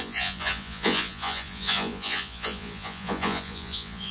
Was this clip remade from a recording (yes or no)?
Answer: yes